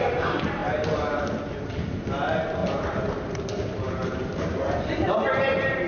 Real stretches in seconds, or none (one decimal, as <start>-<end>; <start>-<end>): 0.6-1.5